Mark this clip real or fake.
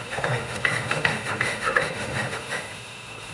fake